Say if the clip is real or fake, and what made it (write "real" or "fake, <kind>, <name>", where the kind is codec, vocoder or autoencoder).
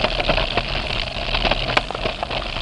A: real